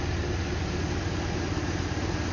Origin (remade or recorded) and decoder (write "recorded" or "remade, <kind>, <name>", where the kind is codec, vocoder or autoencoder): recorded